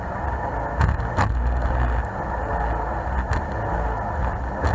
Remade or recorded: recorded